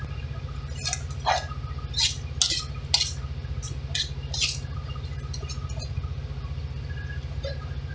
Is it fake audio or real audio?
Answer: real